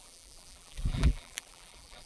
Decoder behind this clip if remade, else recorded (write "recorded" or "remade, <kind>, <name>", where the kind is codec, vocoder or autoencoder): remade, vocoder, BigVGAN v2